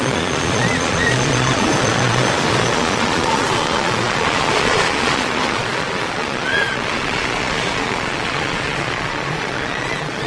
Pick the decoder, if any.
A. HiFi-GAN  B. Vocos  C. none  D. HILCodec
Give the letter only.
B